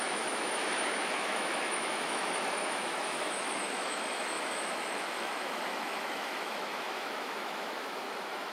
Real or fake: fake